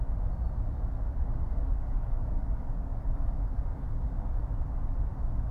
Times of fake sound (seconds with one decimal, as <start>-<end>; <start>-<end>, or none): 1.1-4.4